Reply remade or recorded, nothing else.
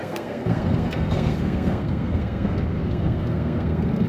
remade